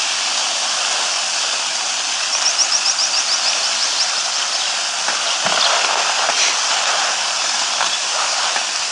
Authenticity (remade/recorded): recorded